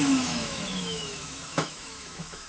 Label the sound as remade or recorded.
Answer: remade